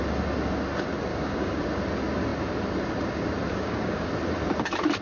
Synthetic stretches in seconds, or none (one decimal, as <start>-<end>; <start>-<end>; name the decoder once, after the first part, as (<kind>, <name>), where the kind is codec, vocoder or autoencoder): 1.1-1.6 (codec, DAC); 3.5-4.1